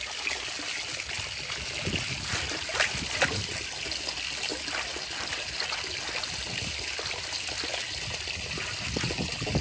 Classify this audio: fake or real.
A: real